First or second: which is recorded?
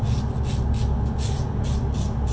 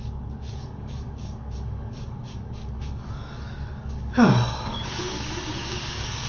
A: first